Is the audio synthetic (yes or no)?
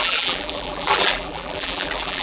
yes